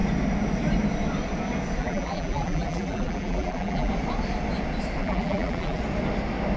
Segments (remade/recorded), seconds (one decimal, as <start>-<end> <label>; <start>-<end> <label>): 0.0-1.8 recorded; 1.8-3.9 remade; 3.9-5.0 recorded; 5.0-5.8 remade; 5.8-6.6 recorded